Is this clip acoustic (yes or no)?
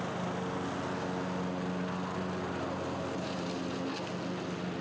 yes